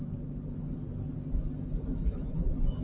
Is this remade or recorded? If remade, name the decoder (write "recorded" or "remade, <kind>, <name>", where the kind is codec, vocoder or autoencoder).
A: recorded